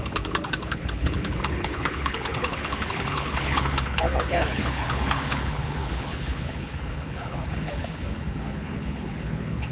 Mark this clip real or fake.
fake